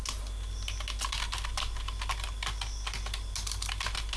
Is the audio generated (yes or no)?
no